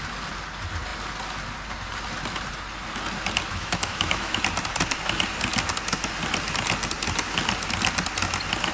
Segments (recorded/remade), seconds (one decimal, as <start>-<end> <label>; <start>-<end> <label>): 0.0-3.5 recorded; 3.5-4.4 remade; 4.4-8.7 recorded

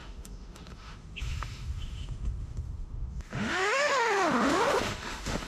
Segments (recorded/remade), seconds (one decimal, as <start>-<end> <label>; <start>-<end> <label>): 0.0-5.5 remade

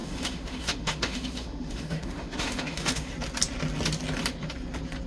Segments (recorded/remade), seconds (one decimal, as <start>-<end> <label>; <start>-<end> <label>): 0.0-3.1 remade; 3.1-5.1 recorded

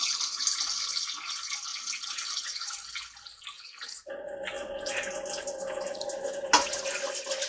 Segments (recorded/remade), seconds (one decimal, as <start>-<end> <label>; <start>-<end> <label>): 0.0-7.5 recorded

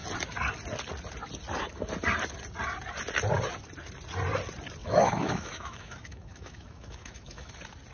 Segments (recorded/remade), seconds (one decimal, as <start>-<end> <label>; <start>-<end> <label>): 0.0-4.8 recorded; 4.8-7.5 remade; 7.5-7.9 recorded